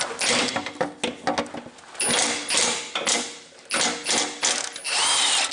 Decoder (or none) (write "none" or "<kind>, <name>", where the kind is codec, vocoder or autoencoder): none